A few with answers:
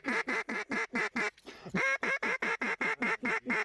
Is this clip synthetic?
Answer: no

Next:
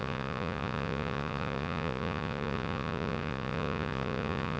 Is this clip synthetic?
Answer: yes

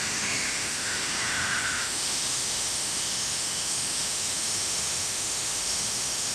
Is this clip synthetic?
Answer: yes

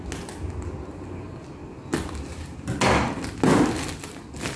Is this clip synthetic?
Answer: no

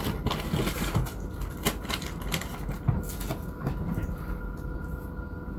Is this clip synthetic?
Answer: no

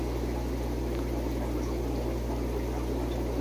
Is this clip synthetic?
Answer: no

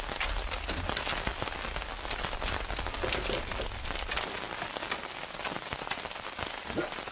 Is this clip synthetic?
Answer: no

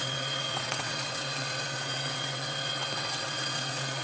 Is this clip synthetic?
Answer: yes